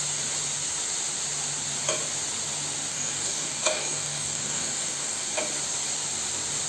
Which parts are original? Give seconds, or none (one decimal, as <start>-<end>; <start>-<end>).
0.0-2.9; 5.4-6.7